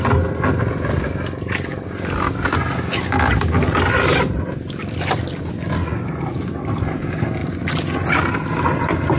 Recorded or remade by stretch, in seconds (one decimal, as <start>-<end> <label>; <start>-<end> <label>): 0.0-5.8 recorded; 5.8-6.5 remade; 6.5-9.2 recorded